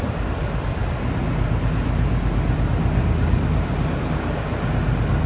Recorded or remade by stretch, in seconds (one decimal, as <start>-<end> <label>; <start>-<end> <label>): 0.0-5.3 recorded